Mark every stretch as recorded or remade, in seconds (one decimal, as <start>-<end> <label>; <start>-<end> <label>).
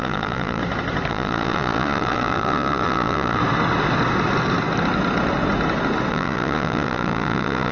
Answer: 0.0-0.6 remade; 0.6-1.1 recorded; 1.1-3.4 remade; 3.4-6.1 recorded; 6.1-7.7 remade